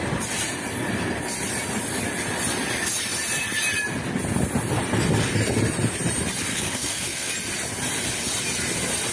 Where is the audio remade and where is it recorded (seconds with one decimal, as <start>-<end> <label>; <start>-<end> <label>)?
0.0-6.5 recorded; 6.5-7.3 remade; 7.3-9.1 recorded